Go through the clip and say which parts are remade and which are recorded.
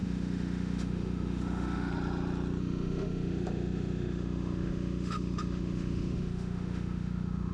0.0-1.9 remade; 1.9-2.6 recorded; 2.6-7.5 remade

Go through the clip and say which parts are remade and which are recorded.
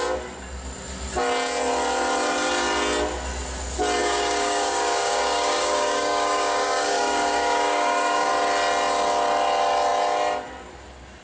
0.0-4.0 recorded; 4.0-8.3 remade; 8.3-11.2 recorded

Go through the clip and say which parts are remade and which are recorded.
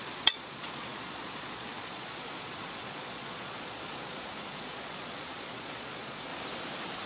0.0-6.3 remade; 6.3-7.1 recorded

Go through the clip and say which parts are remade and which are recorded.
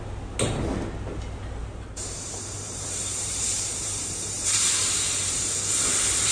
0.0-1.6 recorded; 1.6-5.4 remade; 5.4-6.3 recorded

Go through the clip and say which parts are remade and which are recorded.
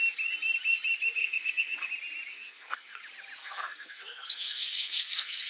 0.0-1.2 recorded; 1.2-1.9 remade; 1.9-2.3 recorded; 2.3-3.0 remade; 3.0-3.4 recorded; 3.4-5.5 remade